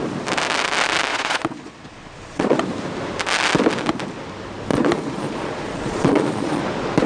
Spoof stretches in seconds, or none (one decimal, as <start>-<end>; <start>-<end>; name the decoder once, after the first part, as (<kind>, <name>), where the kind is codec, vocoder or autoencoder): 1.1-2.6 (vocoder, Vocos); 4.7-6.6